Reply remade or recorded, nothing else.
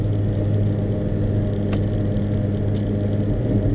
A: recorded